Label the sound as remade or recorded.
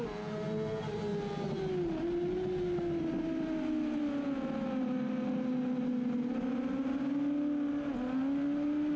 recorded